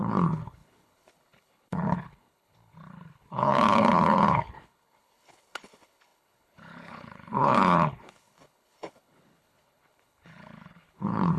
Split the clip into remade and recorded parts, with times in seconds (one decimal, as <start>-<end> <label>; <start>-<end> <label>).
0.0-11.4 remade